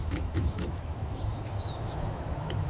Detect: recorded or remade remade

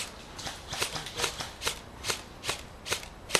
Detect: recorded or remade recorded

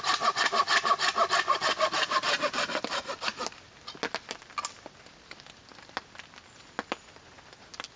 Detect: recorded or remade recorded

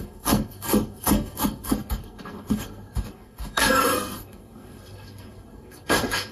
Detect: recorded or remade remade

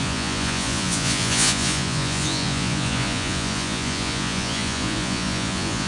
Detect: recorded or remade remade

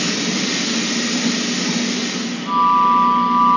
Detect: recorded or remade recorded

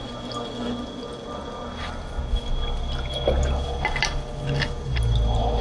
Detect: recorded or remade recorded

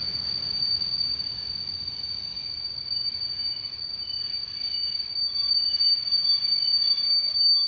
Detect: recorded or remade recorded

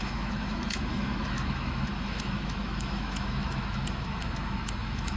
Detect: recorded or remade remade